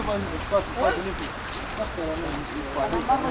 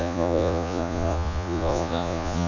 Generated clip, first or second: second